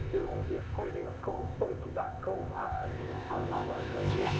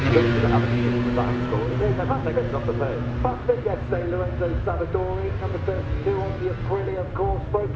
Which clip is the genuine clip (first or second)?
second